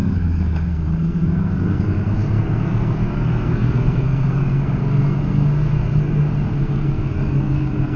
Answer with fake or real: fake